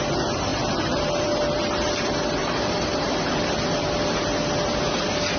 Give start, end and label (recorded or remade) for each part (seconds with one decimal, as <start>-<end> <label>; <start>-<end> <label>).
0.0-0.5 recorded; 0.5-1.9 remade; 1.9-2.4 recorded; 2.4-3.2 remade; 3.2-5.4 recorded

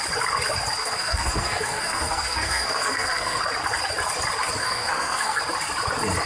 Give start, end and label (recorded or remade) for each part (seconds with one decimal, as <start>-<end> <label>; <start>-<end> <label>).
0.0-0.8 recorded; 0.8-3.4 remade; 3.4-4.6 recorded; 4.6-5.4 remade; 5.4-6.3 recorded

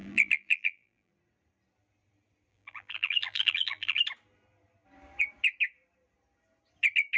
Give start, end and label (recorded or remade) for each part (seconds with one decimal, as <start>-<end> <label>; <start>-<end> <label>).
0.0-1.1 remade; 1.1-2.5 recorded; 2.5-4.0 remade; 4.0-7.2 recorded

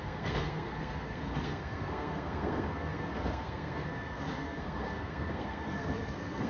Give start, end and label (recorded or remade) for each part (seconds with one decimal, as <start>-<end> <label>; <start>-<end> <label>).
0.0-6.5 remade

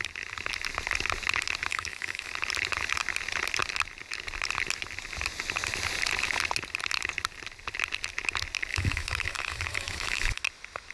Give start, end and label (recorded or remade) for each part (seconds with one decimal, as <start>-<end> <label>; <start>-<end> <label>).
0.0-1.7 recorded; 1.7-2.3 remade; 2.3-8.7 recorded; 8.7-10.4 remade; 10.4-10.9 recorded

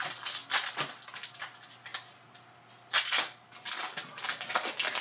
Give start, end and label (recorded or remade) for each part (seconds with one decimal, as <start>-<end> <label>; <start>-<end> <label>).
0.0-5.0 recorded

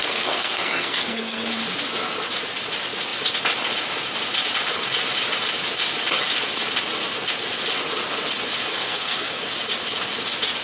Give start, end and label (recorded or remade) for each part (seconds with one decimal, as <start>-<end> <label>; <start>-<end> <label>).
0.0-1.5 remade; 1.5-8.7 recorded; 8.7-9.4 remade; 9.4-10.6 recorded